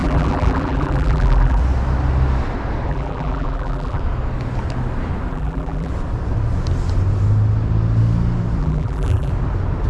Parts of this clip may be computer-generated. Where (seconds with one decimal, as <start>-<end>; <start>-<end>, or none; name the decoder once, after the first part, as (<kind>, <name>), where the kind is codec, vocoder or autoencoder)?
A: 0.0-1.6 (vocoder, BigVGAN v2); 2.9-4.0; 5.3-5.9; 8.6-9.3